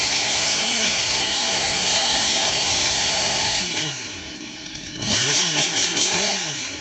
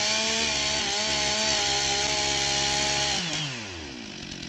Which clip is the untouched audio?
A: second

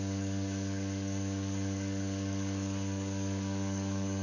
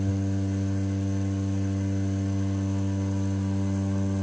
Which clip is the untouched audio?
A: second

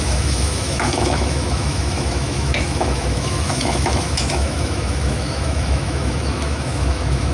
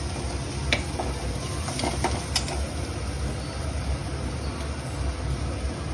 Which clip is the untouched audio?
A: second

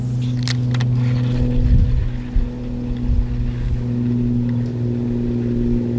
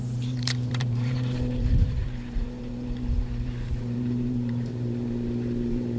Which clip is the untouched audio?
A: first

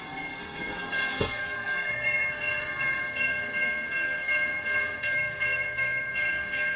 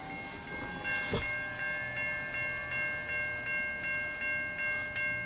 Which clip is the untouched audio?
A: second